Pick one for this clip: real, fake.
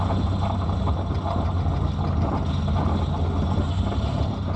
real